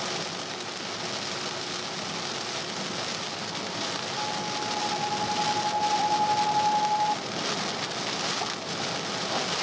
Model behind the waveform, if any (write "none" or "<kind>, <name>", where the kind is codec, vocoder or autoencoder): none